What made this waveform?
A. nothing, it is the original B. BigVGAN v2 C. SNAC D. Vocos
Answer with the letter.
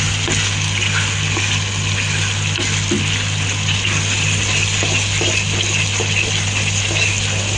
A